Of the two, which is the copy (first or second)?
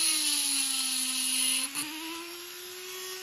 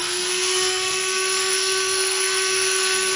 second